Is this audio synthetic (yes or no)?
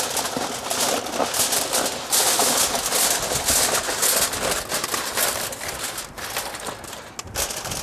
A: no